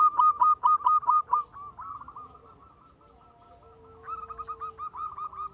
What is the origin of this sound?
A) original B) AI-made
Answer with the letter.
A